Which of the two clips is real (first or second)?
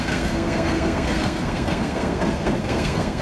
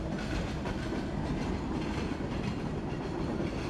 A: second